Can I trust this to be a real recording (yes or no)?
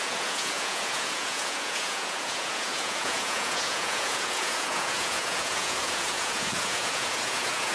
no